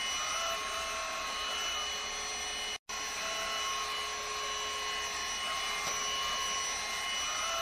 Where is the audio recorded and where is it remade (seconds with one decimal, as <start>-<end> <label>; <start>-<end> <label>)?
0.0-7.6 recorded